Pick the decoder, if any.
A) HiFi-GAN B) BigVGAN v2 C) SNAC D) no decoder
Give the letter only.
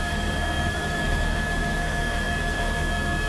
C